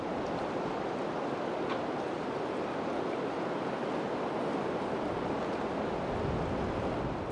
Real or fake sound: real